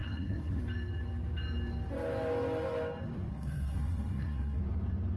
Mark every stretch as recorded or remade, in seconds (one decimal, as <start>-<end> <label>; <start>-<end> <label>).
0.0-0.6 remade; 0.6-3.3 recorded; 3.3-4.6 remade; 4.6-5.2 recorded